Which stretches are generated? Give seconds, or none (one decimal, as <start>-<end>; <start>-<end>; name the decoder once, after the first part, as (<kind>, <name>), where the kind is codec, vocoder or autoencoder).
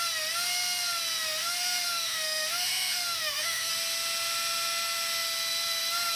1.4-3.7 (autoencoder, DAC-VAE)